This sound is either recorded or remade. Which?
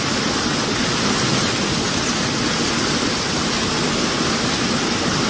recorded